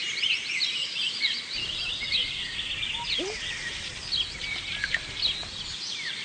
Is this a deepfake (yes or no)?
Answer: no